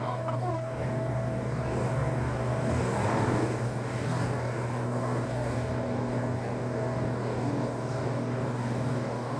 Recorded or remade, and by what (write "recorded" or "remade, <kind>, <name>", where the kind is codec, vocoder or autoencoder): remade, codec, DAC